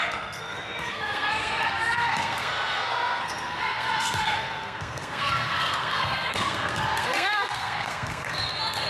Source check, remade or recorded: remade